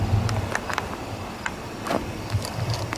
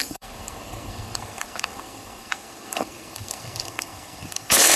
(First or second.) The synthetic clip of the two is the second